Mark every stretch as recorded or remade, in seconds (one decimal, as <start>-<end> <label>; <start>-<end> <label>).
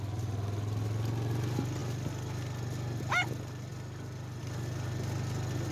0.0-5.7 recorded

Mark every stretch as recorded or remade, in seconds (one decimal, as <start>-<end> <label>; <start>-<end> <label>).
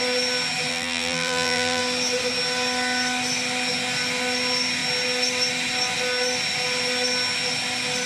0.0-0.7 recorded; 0.7-1.8 remade; 1.8-8.1 recorded